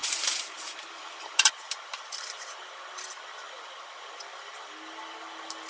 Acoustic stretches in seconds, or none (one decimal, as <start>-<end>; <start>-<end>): 2.5-5.7